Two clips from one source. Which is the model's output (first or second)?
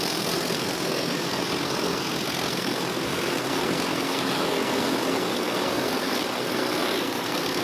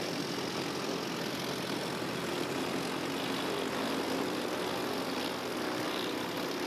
first